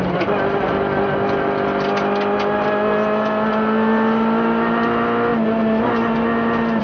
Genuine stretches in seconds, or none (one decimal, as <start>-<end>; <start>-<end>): 0.0-6.8